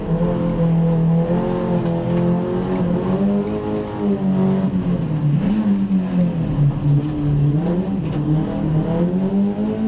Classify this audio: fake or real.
real